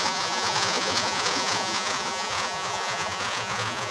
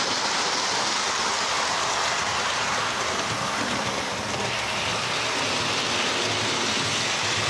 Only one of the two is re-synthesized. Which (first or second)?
first